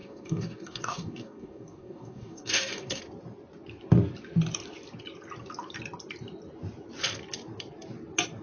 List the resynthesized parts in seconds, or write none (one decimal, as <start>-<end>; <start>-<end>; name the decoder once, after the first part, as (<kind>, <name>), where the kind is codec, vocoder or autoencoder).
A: 0.0-3.0 (codec, DAC)